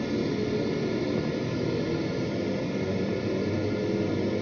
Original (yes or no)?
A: yes